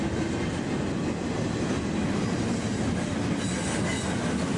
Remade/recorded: recorded